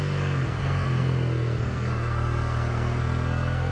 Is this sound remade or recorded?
remade